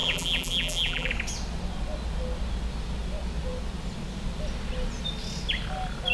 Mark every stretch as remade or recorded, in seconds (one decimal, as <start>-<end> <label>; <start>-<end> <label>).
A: 0.0-1.1 remade; 1.1-6.1 recorded